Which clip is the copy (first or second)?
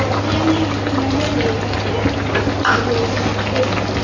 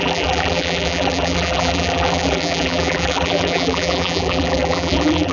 second